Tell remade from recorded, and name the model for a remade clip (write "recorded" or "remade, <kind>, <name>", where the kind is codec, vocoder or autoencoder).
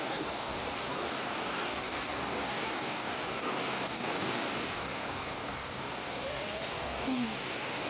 remade, codec, DAC